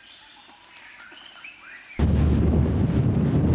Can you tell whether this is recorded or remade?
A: recorded